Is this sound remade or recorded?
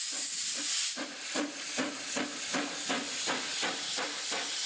recorded